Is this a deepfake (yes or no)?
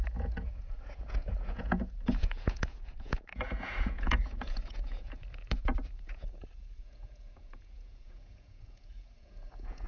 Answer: yes